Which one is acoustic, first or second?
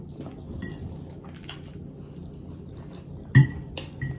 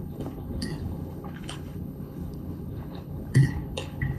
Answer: first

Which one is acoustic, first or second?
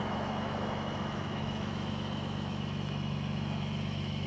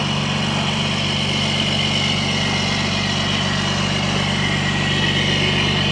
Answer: second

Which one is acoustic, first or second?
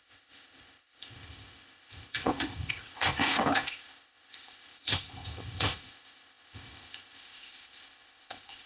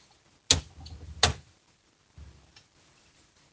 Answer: second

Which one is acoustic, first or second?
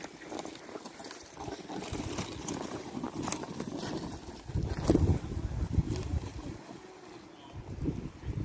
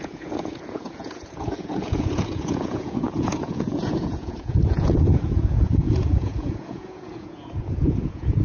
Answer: first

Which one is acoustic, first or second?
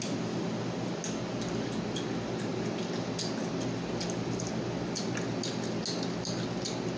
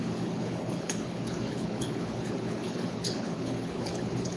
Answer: first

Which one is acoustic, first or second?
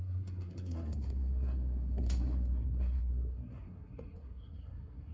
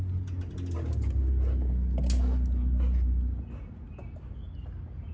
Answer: second